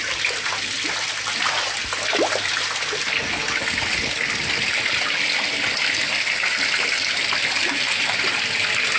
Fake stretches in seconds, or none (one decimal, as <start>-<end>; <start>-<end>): none